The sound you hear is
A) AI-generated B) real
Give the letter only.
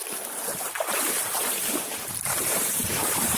A